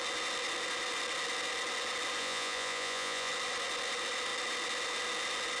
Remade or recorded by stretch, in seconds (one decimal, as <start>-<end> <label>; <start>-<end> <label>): 0.0-2.2 recorded; 2.2-3.3 remade; 3.3-5.6 recorded